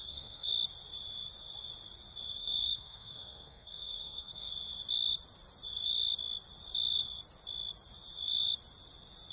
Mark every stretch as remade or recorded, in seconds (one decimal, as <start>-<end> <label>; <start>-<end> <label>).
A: 0.0-0.5 remade; 0.5-2.4 recorded; 2.4-4.5 remade; 4.5-9.3 recorded